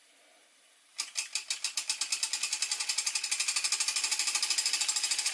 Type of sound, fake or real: real